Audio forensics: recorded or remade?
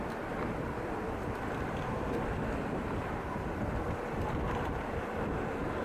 remade